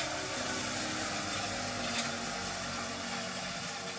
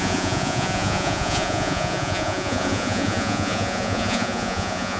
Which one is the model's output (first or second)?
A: second